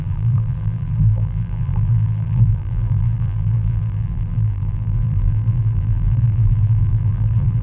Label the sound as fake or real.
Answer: fake